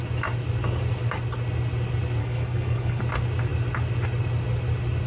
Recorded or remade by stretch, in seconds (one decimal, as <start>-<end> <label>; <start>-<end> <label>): 0.0-2.2 recorded; 2.2-3.0 remade; 3.0-5.1 recorded